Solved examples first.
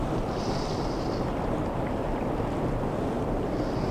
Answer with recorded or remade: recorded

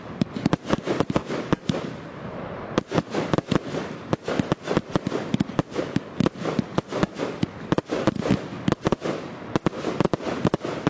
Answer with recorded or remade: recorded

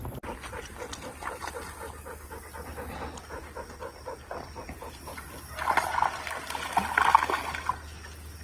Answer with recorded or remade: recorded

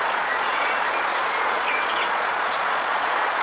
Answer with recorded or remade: remade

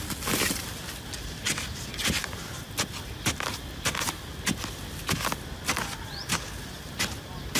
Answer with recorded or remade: recorded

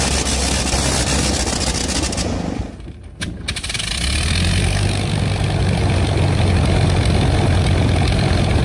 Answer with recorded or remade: recorded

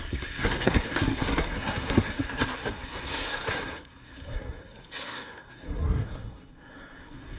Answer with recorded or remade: remade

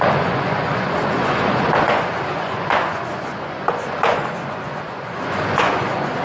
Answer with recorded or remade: remade